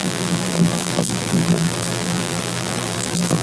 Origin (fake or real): fake